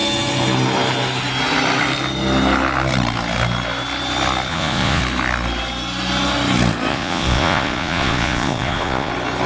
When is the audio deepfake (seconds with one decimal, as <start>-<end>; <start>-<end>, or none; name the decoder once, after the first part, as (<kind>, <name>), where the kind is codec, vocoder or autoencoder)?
4.5-5.0 (vocoder, Vocos); 6.9-9.1

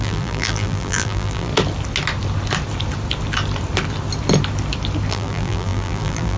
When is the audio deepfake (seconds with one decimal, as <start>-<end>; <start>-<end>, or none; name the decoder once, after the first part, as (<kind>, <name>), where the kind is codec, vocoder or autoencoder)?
0.0-1.5 (vocoder, BigVGAN v2); 5.1-6.4

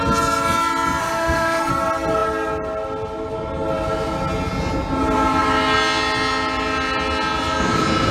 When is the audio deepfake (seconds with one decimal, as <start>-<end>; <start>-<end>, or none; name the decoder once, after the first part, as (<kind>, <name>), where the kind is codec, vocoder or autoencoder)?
1.0-1.7 (autoencoder, DAC-VAE)

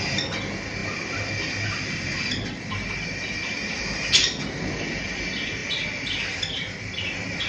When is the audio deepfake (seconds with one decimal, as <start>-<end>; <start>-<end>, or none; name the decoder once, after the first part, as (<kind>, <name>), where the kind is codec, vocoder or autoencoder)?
none

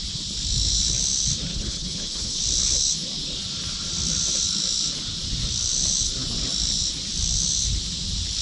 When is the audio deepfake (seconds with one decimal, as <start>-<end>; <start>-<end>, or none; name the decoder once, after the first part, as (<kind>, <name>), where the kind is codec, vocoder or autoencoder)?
1.5-2.4 (codec, HILCodec)

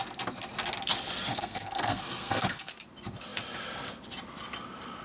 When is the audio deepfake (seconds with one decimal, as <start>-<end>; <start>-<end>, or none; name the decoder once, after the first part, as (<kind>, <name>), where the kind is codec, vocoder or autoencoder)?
1.3-2.7 (codec, SNAC)

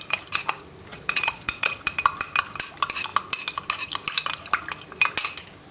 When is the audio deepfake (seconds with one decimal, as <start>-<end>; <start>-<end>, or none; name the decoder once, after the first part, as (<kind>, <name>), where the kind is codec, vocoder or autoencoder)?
0.9-1.9 (vocoder, Vocos)

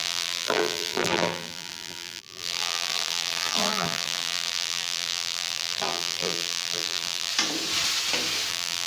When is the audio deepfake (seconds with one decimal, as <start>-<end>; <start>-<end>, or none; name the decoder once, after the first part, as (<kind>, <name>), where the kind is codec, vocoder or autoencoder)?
0.0-7.3 (vocoder, BigVGAN v2); 8.5-8.9